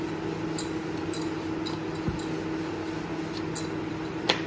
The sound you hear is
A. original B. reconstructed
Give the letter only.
A